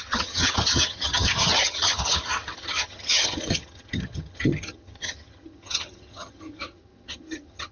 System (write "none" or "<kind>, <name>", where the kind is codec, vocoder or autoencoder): vocoder, HiFi-GAN